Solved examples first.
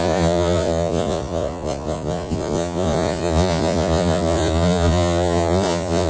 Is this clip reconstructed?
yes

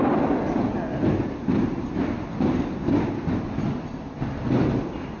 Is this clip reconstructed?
no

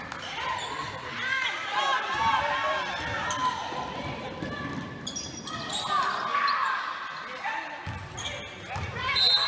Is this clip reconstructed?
no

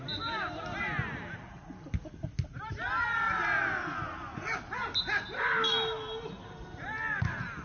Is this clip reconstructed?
no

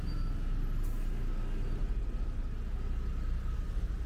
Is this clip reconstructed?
no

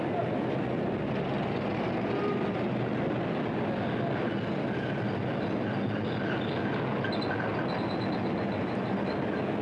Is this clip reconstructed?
no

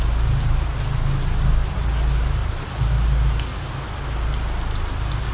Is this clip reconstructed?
no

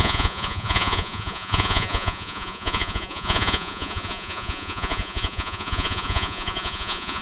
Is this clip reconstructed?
yes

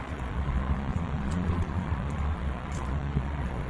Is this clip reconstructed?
yes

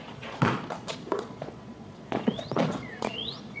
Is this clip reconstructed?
yes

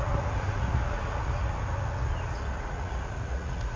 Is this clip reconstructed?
yes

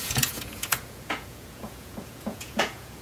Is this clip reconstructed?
yes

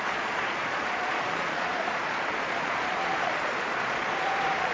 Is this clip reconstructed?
yes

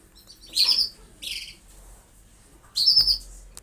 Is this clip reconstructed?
no